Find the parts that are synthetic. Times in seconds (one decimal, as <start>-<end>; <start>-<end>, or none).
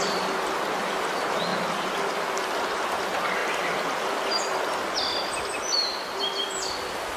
none